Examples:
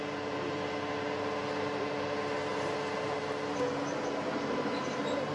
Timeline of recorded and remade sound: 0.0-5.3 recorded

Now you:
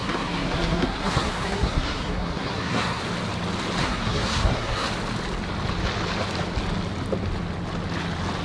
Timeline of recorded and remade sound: 0.0-3.0 remade; 3.0-3.8 recorded; 3.8-4.9 remade; 4.9-8.4 recorded

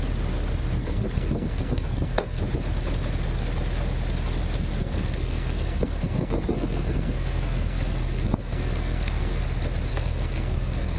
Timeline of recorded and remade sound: 0.0-0.8 recorded; 0.8-2.4 remade; 2.4-4.7 recorded; 4.7-9.4 remade; 9.4-9.9 recorded; 9.9-11.0 remade

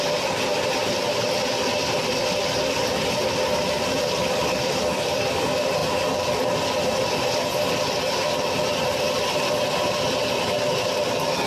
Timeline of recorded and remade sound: 0.0-11.5 recorded

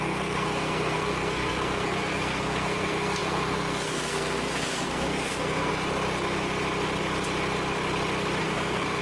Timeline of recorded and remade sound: 0.0-5.7 remade; 5.7-8.4 recorded; 8.4-9.0 remade

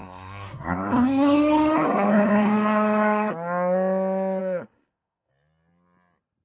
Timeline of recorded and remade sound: 0.0-3.3 remade; 3.3-4.4 recorded; 4.4-5.3 remade; 5.3-6.4 recorded